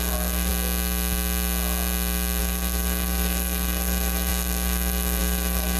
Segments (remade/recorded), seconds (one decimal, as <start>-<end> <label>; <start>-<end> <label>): 0.0-0.5 remade; 0.5-2.4 recorded; 2.4-5.8 remade